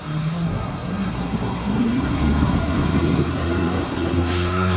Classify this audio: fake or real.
fake